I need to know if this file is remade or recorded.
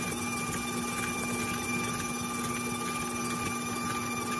recorded